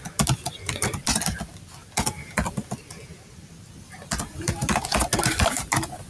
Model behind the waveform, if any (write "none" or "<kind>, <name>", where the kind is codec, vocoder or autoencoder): none